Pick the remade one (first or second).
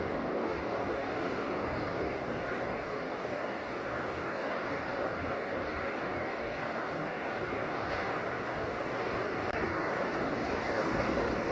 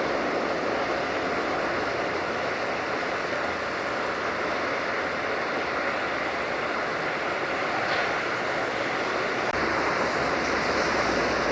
first